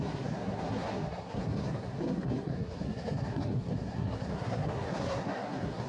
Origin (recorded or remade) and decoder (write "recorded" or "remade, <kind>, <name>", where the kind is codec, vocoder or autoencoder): remade, codec, SNAC